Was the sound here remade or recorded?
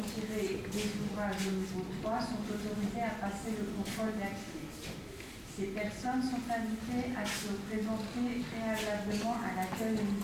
recorded